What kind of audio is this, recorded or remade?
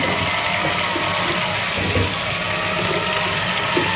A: recorded